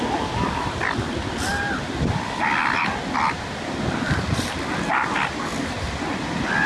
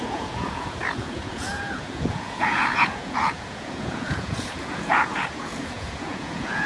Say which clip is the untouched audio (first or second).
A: first